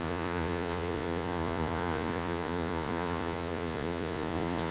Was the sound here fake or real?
fake